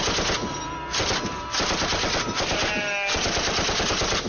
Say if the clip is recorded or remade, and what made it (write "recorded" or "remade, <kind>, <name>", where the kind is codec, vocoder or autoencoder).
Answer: recorded